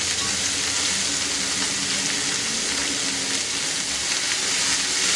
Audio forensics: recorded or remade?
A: recorded